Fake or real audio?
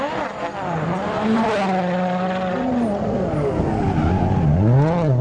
real